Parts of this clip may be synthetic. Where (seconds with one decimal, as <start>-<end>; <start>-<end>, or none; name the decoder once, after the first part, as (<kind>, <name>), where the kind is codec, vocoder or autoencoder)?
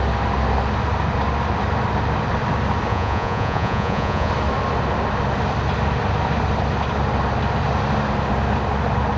2.9-4.3 (vocoder, Vocos)